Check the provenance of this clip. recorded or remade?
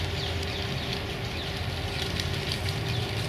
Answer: recorded